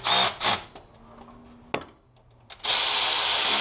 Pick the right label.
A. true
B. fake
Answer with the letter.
A